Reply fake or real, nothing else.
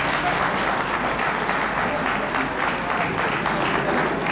real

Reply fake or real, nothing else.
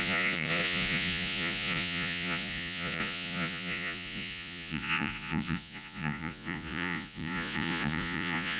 fake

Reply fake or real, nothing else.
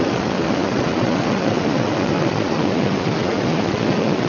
fake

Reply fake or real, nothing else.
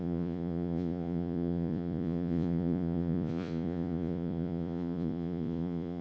fake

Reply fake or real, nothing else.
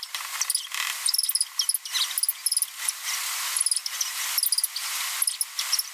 real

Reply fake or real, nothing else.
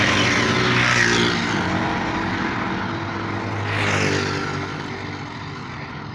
real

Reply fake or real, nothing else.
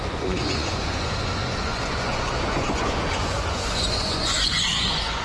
fake